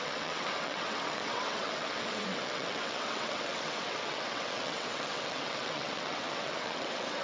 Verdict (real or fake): fake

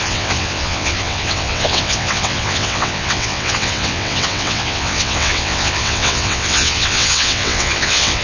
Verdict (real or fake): fake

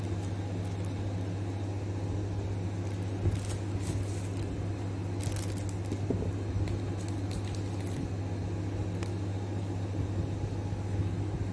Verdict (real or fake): real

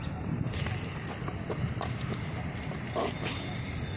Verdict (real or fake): real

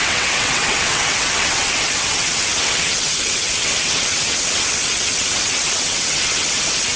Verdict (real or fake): fake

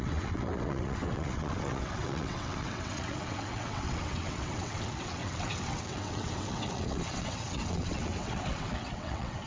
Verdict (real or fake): fake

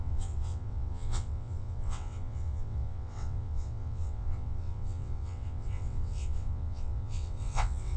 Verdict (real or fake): fake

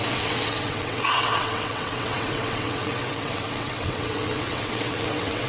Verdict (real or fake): fake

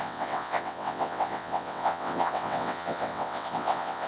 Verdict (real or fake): fake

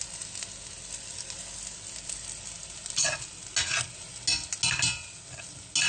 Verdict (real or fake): real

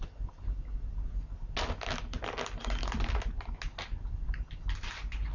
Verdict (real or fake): real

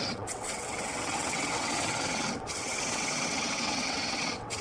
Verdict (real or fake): fake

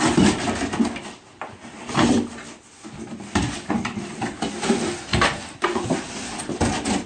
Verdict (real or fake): real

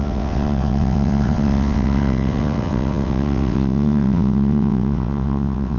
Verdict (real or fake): fake